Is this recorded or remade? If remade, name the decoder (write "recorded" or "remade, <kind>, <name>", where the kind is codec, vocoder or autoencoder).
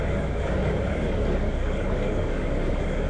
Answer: remade, codec, DAC